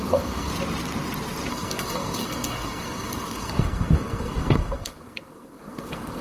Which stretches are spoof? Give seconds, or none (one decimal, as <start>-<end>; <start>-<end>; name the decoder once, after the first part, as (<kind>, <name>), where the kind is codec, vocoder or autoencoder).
0.0-0.5 (codec, SNAC); 1.5-6.2